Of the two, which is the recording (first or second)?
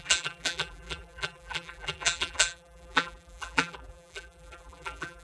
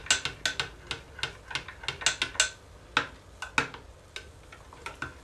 second